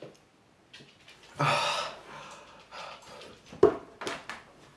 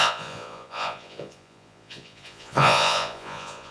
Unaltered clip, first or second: first